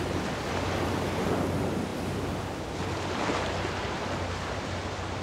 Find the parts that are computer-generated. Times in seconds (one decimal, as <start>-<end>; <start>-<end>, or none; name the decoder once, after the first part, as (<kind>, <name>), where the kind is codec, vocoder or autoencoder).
none